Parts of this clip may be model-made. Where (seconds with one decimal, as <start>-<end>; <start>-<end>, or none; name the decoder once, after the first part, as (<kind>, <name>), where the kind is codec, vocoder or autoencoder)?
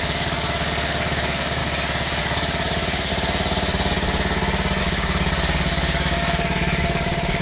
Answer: 0.0-1.6 (codec, DAC); 2.2-3.1; 4.8-7.4